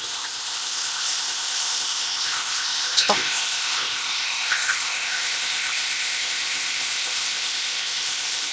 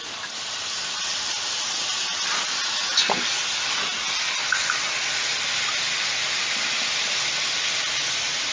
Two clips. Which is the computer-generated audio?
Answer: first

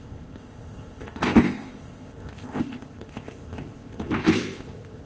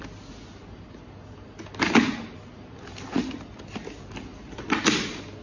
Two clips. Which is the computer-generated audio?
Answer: first